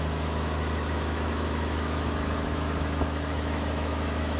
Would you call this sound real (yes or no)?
no